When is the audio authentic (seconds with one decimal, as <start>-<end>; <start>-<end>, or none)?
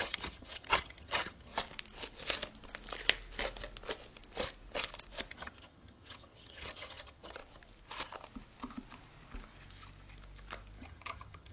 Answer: 1.5-5.3; 7.4-10.8